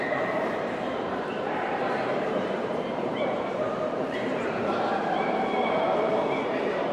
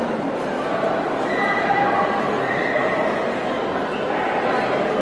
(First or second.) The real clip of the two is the second